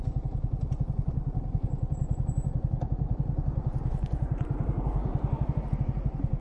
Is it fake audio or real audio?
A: fake